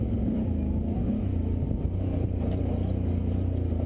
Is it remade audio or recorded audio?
recorded